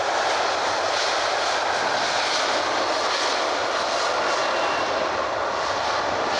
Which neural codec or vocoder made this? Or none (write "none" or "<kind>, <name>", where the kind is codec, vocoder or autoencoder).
none